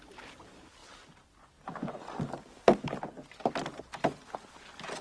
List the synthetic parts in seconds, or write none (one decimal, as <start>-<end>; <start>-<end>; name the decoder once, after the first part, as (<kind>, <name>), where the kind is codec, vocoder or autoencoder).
none